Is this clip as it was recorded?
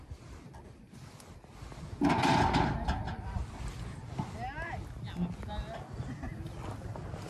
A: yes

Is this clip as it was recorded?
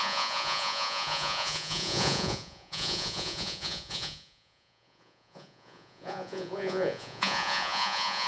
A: no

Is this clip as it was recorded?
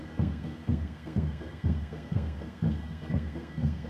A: no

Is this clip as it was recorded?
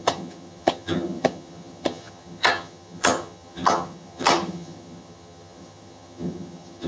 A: no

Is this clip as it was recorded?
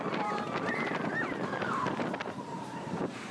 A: yes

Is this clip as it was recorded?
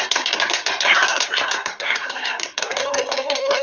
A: no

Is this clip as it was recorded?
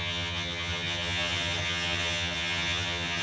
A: no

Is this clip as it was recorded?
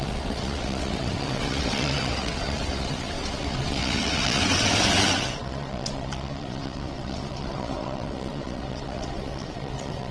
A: no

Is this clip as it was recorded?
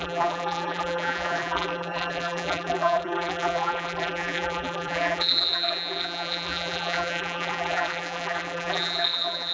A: no